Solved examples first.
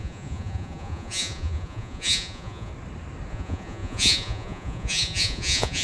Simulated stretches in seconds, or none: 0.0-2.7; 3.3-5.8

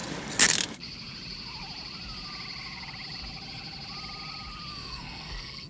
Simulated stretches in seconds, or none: 4.7-5.7